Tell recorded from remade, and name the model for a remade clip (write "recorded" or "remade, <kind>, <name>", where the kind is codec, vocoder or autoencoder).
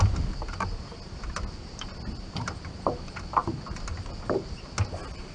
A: recorded